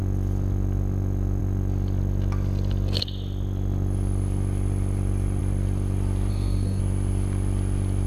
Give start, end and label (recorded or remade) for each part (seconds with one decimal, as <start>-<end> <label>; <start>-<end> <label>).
0.0-6.3 recorded; 6.3-6.8 remade; 6.8-8.1 recorded